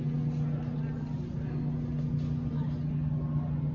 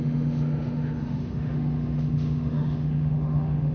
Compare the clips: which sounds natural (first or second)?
first